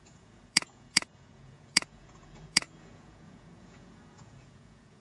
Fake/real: fake